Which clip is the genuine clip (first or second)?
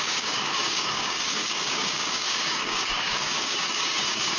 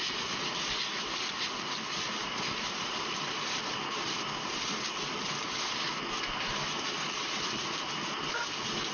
second